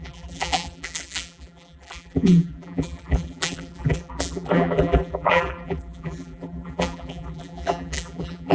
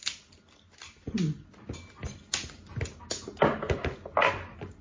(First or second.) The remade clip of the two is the first